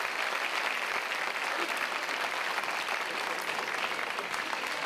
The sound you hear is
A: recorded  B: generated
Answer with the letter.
A